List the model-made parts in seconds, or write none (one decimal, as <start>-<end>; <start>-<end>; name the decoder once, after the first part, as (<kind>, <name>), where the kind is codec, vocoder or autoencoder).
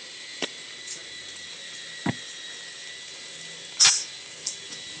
0.0-5.0 (vocoder, BigVGAN v2)